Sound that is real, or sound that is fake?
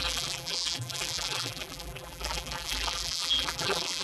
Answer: fake